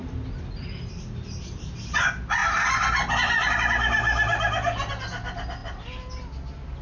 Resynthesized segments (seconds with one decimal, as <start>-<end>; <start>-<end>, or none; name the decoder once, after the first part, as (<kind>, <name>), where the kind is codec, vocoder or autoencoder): none